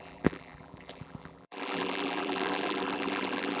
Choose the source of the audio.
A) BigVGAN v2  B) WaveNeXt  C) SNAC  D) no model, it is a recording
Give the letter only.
A